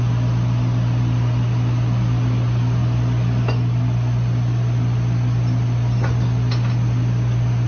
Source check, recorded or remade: recorded